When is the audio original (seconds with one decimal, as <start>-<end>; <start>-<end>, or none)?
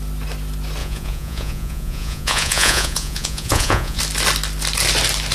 0.0-0.8; 4.0-5.3